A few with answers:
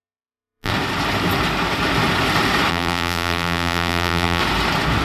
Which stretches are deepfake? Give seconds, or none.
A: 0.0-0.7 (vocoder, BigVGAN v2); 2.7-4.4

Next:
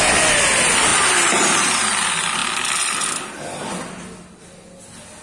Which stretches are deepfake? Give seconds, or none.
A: 0.9-1.7 (vocoder, BigVGAN v2)

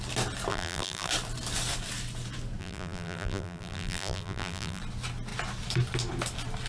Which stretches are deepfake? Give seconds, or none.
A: 0.5-1.1 (vocoder, BigVGAN v2); 2.6-4.8

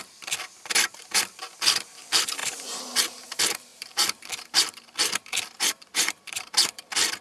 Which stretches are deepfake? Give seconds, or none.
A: 0.0-7.2 (vocoder, BigVGAN v2)

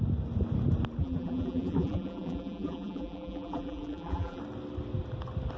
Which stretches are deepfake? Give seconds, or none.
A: 1.0-4.4 (vocoder, BigVGAN v2)

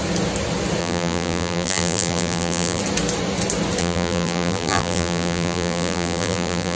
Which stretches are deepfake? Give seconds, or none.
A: 0.8-2.8 (vocoder, BigVGAN v2); 3.8-6.8

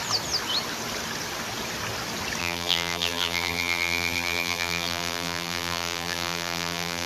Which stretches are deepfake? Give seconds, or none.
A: 2.4-7.1 (vocoder, BigVGAN v2)

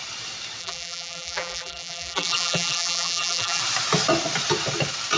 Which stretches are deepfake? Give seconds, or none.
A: 0.6-3.6 (vocoder, BigVGAN v2)